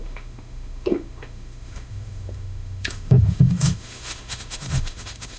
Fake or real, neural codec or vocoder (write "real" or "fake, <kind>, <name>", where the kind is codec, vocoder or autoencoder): fake, autoencoder, DAC-VAE